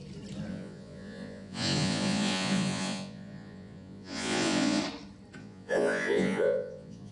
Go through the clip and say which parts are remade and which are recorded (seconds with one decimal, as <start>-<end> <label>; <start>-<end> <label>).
0.0-0.5 recorded; 0.5-4.8 remade; 4.8-5.4 recorded; 5.4-7.1 remade